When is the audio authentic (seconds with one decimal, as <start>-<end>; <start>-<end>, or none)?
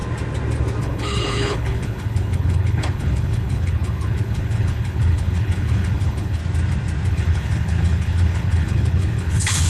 0.0-0.8; 6.4-7.1